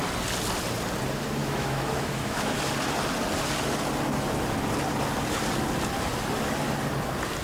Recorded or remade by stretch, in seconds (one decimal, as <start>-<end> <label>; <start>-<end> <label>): 0.0-1.4 recorded; 1.4-2.6 remade; 2.6-7.4 recorded